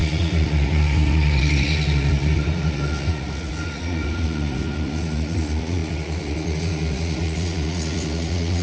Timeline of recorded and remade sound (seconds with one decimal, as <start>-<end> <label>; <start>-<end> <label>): 0.0-8.6 remade